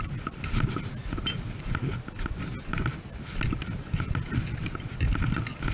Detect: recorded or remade recorded